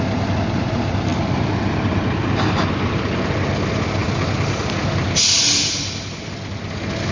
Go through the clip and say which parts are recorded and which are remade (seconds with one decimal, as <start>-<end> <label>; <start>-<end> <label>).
0.0-7.1 recorded